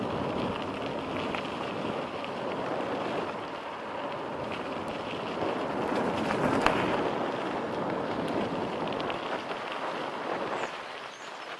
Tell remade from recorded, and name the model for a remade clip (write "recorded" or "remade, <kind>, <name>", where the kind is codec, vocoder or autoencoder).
recorded